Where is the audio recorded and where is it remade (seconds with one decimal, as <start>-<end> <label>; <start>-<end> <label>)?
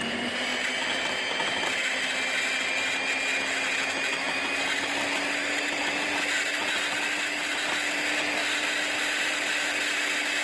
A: 0.0-8.4 recorded; 8.4-9.6 remade; 9.6-10.4 recorded